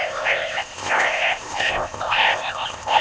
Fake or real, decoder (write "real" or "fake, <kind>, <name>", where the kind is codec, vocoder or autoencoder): fake, codec, ZipCodec